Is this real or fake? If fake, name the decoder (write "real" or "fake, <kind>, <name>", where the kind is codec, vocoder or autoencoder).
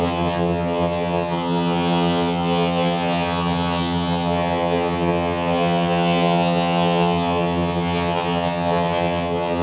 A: fake, vocoder, HiFi-GAN